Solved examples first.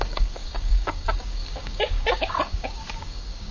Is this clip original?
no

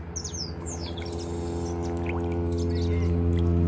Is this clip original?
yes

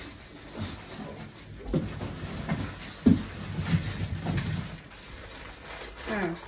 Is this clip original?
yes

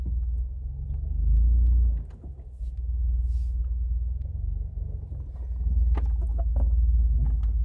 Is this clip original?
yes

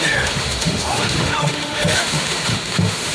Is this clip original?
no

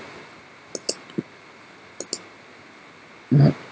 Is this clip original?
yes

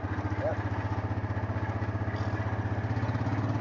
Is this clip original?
yes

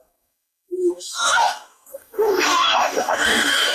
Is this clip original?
no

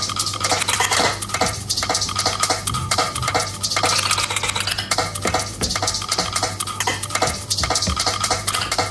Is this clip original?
yes